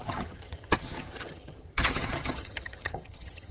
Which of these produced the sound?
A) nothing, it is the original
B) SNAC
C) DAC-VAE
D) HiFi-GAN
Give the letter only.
D